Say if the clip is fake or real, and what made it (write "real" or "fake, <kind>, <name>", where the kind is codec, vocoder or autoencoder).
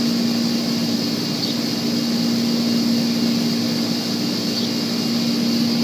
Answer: real